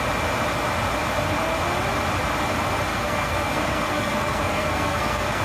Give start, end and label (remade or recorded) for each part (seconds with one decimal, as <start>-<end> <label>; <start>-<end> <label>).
0.0-2.9 recorded; 2.9-5.4 remade